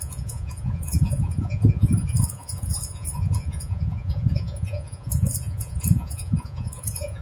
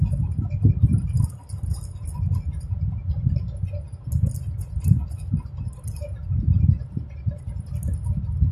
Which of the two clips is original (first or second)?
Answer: second